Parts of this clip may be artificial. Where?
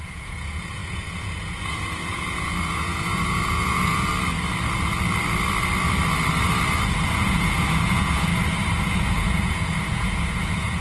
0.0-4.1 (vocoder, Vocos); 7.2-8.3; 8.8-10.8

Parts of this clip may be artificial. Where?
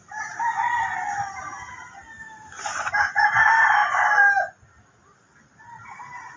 none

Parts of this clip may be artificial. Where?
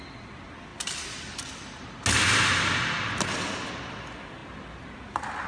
none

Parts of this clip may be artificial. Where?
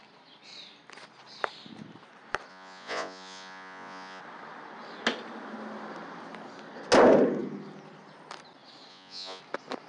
2.5-4.2 (vocoder, Vocos); 8.9-9.4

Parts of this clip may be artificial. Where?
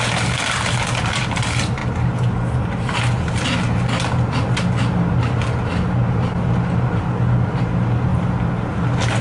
none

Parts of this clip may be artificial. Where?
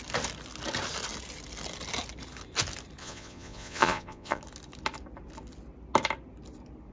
3.0-4.4 (vocoder, Vocos)